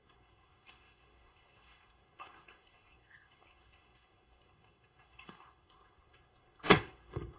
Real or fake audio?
fake